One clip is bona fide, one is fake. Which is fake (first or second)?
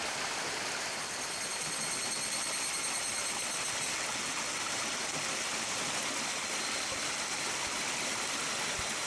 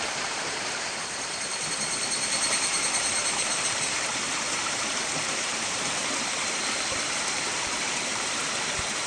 second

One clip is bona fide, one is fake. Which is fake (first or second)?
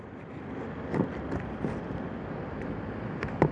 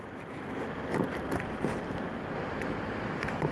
second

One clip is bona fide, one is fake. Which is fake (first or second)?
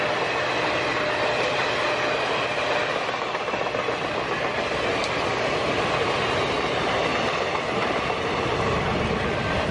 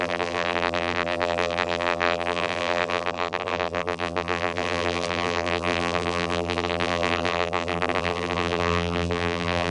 second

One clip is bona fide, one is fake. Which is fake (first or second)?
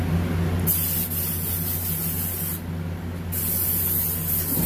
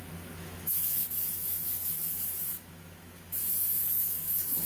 second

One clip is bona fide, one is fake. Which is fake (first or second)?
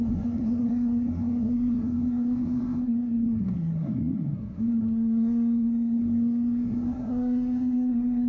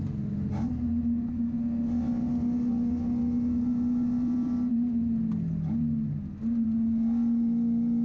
first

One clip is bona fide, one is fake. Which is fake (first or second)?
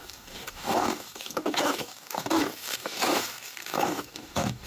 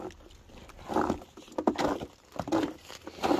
first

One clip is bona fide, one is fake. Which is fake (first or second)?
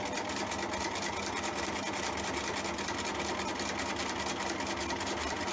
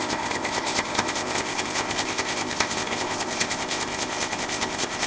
second